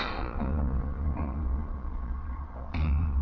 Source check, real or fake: fake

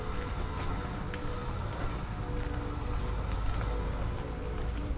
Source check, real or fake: real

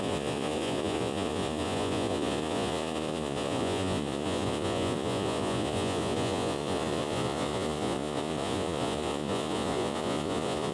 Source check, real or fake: fake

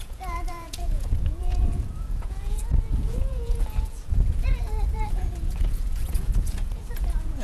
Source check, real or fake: fake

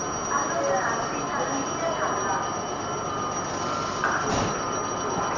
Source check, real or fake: real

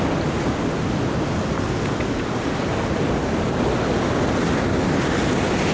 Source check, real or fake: real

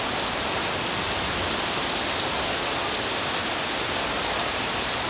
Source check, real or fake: real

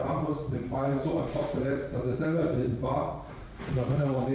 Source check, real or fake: fake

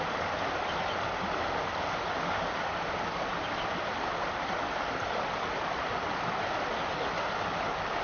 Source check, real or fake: real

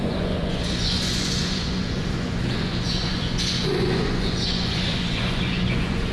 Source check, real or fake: fake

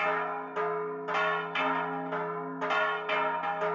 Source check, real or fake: real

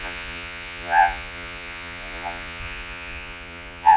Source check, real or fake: fake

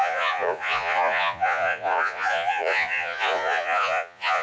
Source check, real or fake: fake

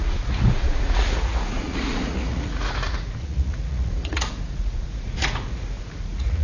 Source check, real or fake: fake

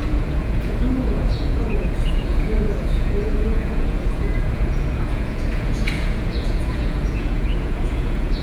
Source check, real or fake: fake